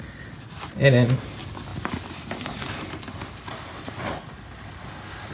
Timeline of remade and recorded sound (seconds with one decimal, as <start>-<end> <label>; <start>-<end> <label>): 0.0-5.3 recorded